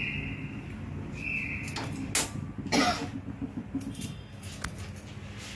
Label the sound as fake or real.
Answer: real